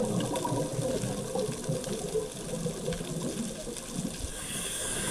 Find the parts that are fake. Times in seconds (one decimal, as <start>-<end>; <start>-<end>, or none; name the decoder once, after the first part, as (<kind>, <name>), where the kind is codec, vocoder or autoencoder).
4.3-5.1 (codec, DAC)